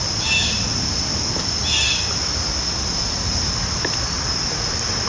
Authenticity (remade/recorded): recorded